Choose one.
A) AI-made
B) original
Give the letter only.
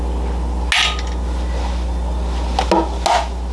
B